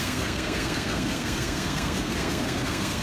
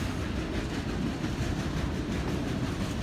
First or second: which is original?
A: second